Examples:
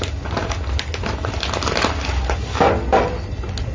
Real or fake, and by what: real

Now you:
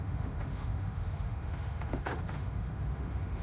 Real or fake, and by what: fake, autoencoder, DAC-VAE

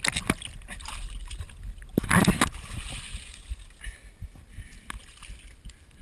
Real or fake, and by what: real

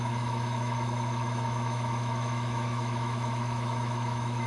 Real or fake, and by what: fake, autoencoder, DAC-VAE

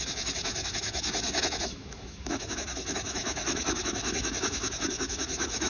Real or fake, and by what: fake, autoencoder, DAC-VAE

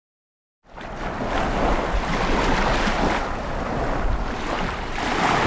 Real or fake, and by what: real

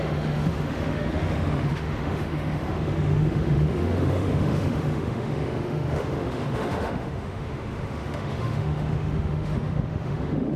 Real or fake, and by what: fake, autoencoder, DAC-VAE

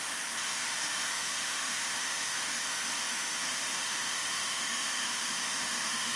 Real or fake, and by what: fake, autoencoder, DAC-VAE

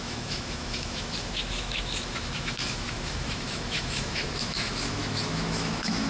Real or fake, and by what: fake, autoencoder, DAC-VAE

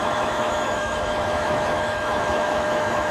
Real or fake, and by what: fake, autoencoder, DAC-VAE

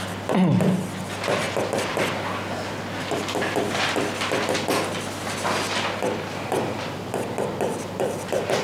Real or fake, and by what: real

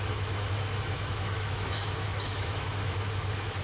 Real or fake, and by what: fake, autoencoder, DAC-VAE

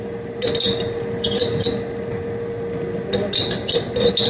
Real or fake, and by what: real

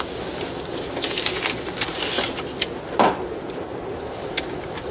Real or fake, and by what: real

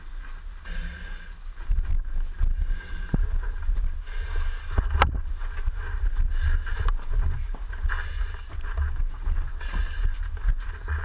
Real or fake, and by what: real